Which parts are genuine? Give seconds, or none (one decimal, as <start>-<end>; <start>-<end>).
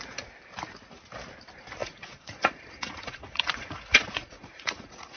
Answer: 0.0-1.8